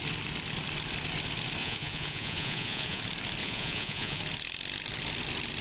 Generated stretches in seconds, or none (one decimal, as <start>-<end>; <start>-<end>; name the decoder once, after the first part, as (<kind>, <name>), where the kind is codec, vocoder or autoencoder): 1.6-3.0 (vocoder, Vocos); 3.4-4.2